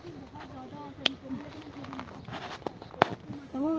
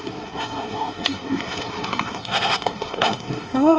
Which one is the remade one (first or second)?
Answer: second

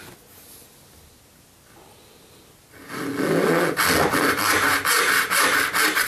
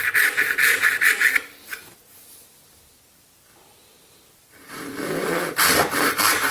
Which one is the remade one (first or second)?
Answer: second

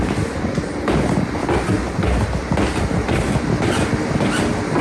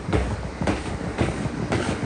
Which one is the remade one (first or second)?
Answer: second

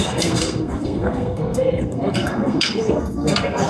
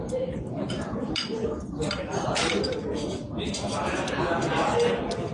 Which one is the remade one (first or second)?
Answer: first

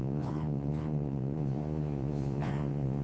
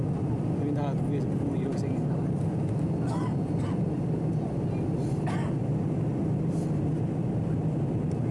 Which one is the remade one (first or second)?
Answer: first